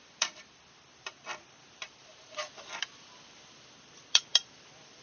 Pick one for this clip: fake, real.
fake